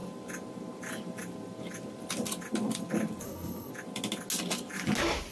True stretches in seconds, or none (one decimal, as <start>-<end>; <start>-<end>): 0.0-3.2; 3.7-5.3